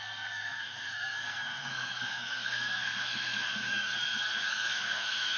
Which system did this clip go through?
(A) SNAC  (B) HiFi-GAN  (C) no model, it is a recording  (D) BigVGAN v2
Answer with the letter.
A